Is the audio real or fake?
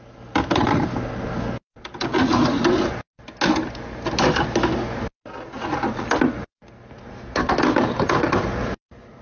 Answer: real